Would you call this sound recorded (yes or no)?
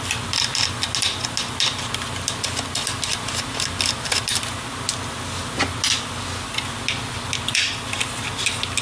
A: yes